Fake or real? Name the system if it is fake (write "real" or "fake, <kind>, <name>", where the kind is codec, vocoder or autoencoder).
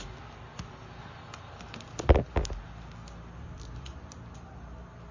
real